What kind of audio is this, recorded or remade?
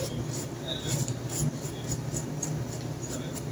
remade